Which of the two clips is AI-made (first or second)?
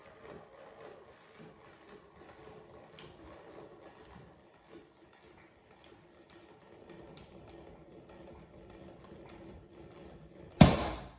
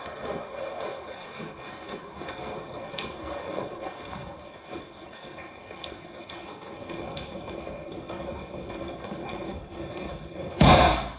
second